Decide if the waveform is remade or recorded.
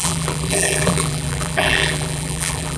remade